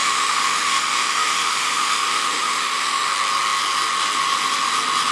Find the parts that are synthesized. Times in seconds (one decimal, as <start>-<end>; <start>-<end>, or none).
0.0-3.1